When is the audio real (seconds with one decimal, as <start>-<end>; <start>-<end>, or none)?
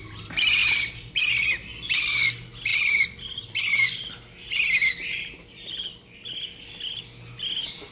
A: 0.0-0.6; 1.2-2.7; 6.8-7.9